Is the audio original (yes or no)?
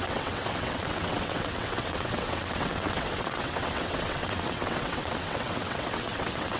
no